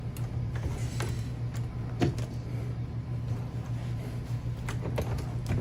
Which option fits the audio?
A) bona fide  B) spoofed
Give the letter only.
A